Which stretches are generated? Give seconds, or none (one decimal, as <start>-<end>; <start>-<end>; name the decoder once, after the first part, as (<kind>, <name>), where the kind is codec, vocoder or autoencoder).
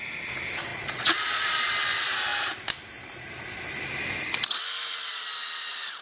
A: 0.7-1.7 (vocoder, Vocos)